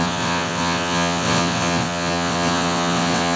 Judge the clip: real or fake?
fake